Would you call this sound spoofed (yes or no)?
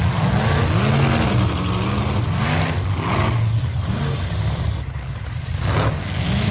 no